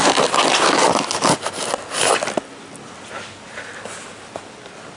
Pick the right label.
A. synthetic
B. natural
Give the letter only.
B